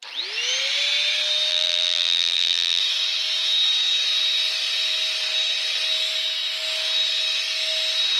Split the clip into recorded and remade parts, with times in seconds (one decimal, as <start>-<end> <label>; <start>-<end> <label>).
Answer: 0.0-1.5 recorded; 1.5-2.8 remade; 2.8-8.2 recorded